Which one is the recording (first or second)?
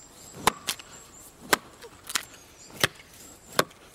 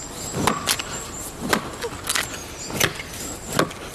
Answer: second